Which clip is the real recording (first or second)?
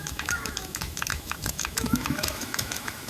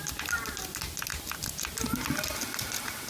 second